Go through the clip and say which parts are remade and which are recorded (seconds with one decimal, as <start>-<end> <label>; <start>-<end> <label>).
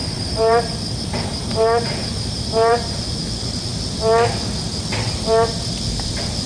0.0-3.0 remade; 3.0-6.5 recorded